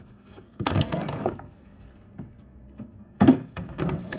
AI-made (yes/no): yes